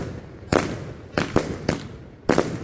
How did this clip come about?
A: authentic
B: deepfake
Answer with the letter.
A